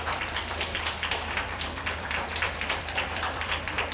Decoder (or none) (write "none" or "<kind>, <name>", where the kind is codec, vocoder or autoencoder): vocoder, BigVGAN v2